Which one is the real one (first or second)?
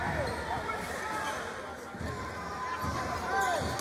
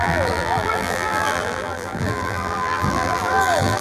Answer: first